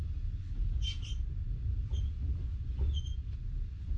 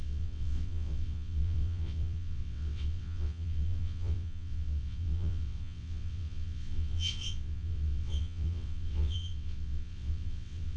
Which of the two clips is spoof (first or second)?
second